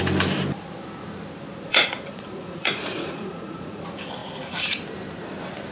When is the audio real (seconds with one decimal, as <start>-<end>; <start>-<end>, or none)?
0.0-1.7; 3.8-5.7